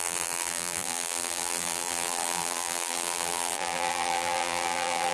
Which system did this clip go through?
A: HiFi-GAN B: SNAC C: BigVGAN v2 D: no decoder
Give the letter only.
C